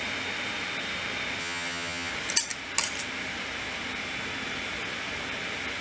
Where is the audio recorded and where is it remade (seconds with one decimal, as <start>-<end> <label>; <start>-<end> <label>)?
0.0-1.4 recorded; 1.4-2.1 remade; 2.1-5.8 recorded